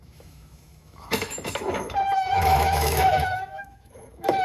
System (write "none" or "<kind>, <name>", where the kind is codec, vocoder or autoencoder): autoencoder, DAC-VAE